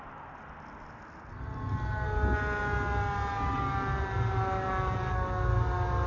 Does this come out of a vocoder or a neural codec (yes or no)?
no